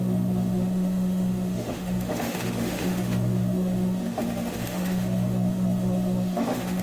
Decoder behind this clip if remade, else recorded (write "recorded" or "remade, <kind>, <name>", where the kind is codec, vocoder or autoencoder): remade, autoencoder, DAC-VAE